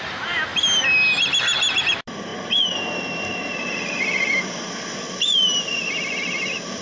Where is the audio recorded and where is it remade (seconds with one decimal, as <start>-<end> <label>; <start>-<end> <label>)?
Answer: 0.0-6.8 recorded